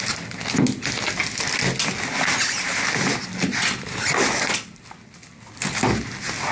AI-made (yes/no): no